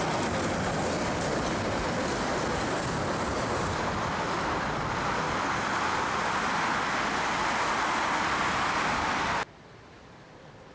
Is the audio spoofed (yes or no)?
no